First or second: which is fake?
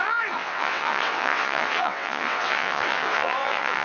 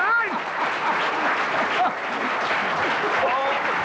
first